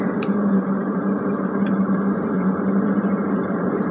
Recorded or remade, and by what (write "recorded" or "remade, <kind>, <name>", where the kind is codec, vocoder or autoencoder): remade, vocoder, BigVGAN v2